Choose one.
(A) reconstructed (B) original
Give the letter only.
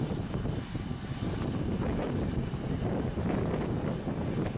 B